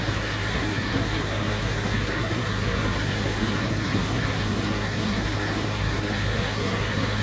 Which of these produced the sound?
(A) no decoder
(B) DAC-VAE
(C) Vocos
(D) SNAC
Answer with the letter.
D